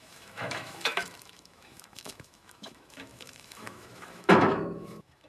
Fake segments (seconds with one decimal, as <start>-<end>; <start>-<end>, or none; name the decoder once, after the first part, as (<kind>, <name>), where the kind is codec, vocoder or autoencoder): 0.0-5.3 (autoencoder, DAC-VAE)